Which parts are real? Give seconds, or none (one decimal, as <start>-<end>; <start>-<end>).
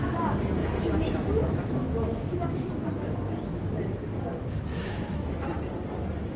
0.0-0.6; 2.7-4.3; 5.5-6.4